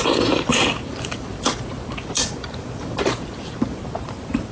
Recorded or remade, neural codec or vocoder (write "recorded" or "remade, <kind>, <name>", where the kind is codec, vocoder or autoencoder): remade, vocoder, BigVGAN v2